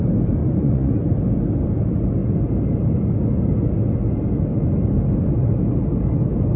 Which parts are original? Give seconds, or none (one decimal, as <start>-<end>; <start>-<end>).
0.0-0.4; 0.9-6.6